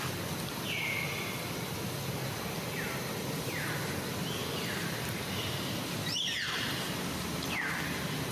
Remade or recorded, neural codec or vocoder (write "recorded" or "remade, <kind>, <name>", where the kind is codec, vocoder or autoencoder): recorded